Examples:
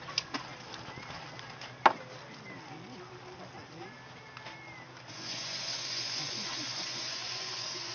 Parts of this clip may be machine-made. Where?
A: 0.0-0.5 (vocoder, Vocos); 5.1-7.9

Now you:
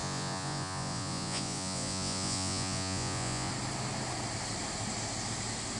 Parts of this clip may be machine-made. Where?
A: 0.0-3.5 (vocoder, Vocos)

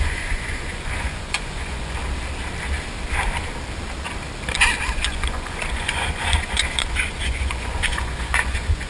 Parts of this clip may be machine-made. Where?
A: 0.0-2.0 (vocoder, Vocos); 4.8-8.9

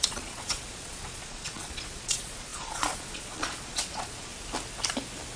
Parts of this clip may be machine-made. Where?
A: 0.0-4.3 (vocoder, Vocos)

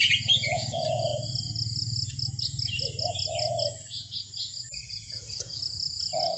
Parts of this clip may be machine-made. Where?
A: 0.0-1.1 (vocoder, Vocos); 4.8-6.4

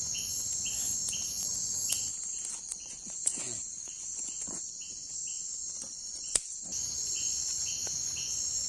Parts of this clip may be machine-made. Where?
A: 0.0-2.1 (vocoder, Vocos); 2.6-5.0; 6.1-8.7

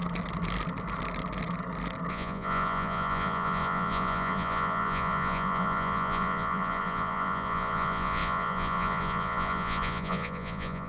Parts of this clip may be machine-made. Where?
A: 2.1-10.9 (vocoder, Vocos)

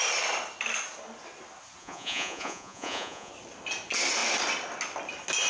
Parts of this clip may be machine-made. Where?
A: 1.8-3.3 (vocoder, Vocos)